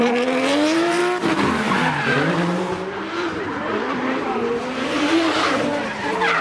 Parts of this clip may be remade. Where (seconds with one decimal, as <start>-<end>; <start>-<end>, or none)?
0.0-1.0; 2.3-5.7